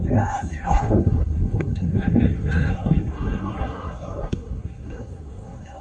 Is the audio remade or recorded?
remade